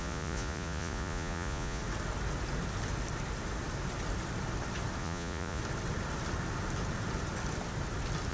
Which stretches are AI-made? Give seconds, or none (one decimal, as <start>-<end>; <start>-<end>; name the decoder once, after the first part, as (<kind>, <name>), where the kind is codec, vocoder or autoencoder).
0.0-1.8 (vocoder, Vocos); 5.0-5.6